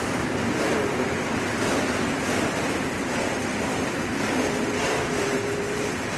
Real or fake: fake